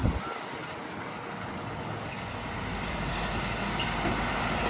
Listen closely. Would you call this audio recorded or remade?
recorded